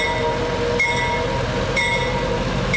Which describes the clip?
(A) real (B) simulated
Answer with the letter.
A